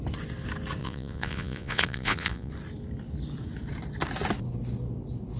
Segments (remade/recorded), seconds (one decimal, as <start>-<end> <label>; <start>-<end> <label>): 0.0-0.8 recorded; 0.8-2.5 remade; 2.5-5.4 recorded